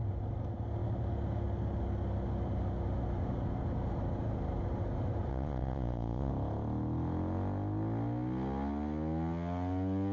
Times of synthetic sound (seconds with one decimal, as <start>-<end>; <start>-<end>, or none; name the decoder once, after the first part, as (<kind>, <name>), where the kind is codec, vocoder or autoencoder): 5.3-6.3 (vocoder, Vocos)